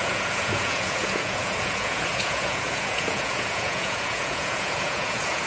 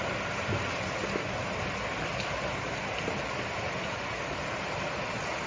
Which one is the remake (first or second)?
first